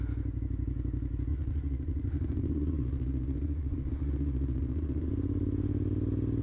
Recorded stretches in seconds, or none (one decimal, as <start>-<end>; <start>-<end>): 0.0-1.3; 5.1-6.4

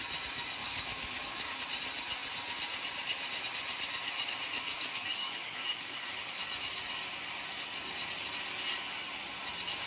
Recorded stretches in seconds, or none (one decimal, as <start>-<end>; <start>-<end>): 0.0-0.6; 1.6-4.7; 6.4-9.9

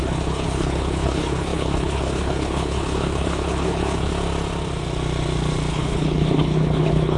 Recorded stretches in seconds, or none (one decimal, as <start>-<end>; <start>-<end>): 4.1-5.7